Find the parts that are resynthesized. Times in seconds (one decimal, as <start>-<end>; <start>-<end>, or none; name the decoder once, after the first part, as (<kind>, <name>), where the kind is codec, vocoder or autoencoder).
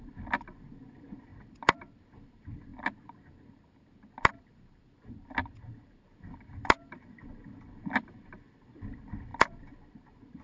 0.0-2.7 (vocoder, BigVGAN v2); 4.4-10.4